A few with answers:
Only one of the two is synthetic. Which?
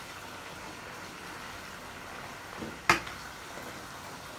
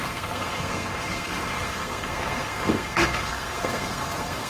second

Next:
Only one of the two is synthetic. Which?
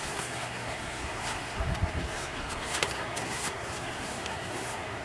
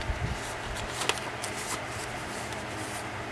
first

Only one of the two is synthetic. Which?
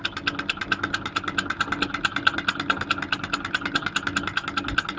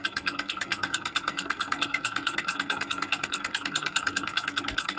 second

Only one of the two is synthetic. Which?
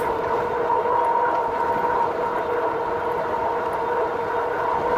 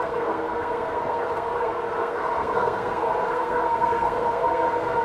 second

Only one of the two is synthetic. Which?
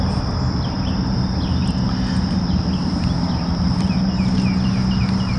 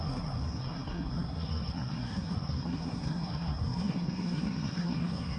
second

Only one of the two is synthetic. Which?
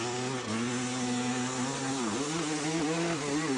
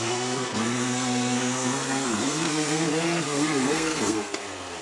second